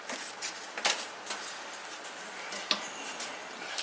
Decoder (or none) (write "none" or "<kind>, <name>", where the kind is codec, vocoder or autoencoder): none